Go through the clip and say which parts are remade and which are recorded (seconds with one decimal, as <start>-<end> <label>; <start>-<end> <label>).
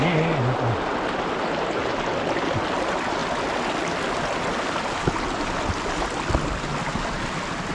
0.0-7.7 recorded